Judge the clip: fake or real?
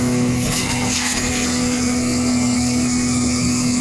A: fake